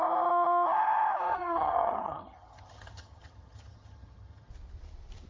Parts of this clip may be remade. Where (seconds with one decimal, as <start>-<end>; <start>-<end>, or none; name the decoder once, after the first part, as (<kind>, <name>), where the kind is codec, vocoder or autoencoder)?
1.3-4.5 (vocoder, HiFi-GAN)